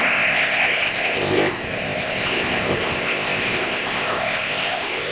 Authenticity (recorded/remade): remade